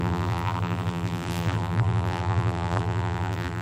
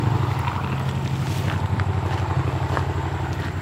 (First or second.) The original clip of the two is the second